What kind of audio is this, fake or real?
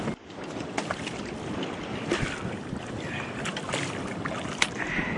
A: real